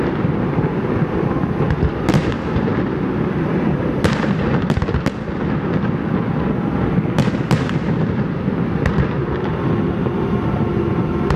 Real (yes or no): yes